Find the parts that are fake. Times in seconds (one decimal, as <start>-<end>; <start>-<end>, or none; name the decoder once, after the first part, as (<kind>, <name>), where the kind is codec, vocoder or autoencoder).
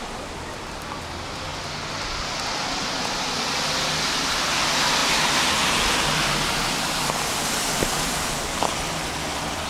none